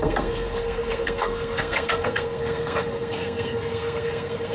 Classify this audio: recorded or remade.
remade